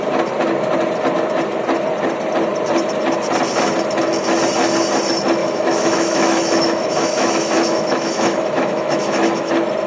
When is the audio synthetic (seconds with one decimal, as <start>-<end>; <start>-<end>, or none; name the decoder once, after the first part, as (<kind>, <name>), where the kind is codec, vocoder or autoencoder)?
5.4-9.5 (autoencoder, DAC-VAE)